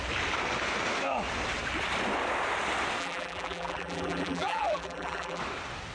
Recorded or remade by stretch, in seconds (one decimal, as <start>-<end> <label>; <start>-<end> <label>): 0.0-3.0 recorded; 3.0-5.4 remade; 5.4-5.9 recorded